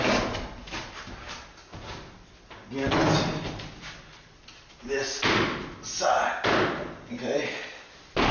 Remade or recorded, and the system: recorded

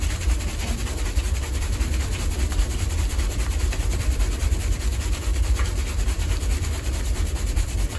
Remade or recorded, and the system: remade, vocoder, BigVGAN v2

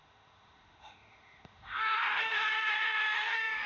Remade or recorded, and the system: remade, autoencoder, DAC-VAE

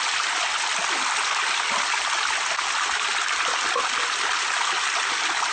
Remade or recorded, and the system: recorded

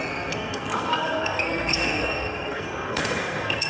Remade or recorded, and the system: remade, codec, SNAC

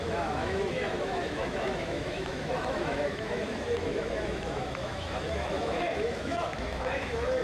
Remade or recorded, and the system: remade, autoencoder, DAC-VAE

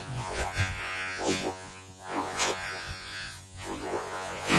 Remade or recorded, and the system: remade, vocoder, Vocos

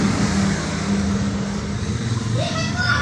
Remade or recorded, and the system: remade, codec, DAC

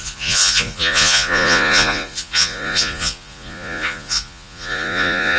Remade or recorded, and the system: remade, vocoder, Vocos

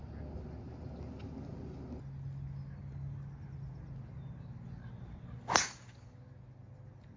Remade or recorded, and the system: recorded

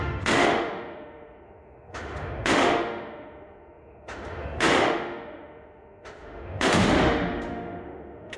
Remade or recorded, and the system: remade, autoencoder, DAC-VAE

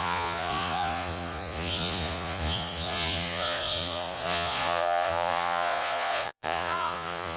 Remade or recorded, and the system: remade, vocoder, Vocos